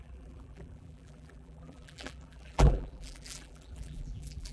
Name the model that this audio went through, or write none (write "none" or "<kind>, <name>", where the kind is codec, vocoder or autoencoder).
vocoder, BigVGAN v2